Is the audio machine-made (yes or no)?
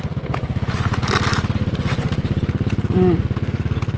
no